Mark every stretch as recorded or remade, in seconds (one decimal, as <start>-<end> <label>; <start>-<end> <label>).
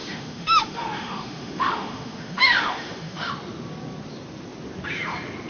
0.0-3.3 remade; 3.3-5.5 recorded